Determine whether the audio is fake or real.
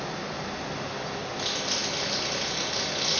real